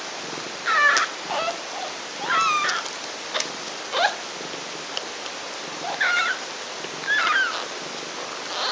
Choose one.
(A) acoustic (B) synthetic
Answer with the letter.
A